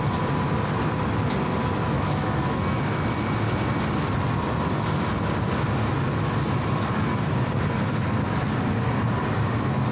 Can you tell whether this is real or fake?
real